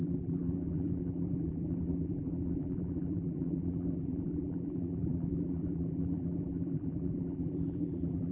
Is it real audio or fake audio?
fake